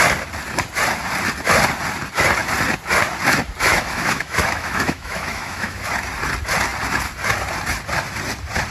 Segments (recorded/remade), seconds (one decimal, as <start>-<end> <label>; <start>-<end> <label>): 0.0-3.7 recorded; 3.7-5.9 remade; 5.9-8.7 recorded